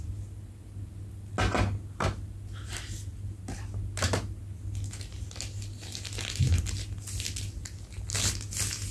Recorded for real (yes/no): yes